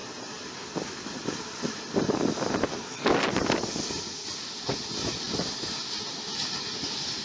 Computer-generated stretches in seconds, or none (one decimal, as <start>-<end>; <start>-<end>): 5.0-5.5